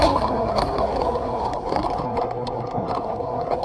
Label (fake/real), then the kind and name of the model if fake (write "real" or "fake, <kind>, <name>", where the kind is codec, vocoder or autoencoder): fake, codec, SNAC